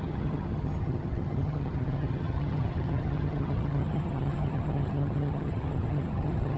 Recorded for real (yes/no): no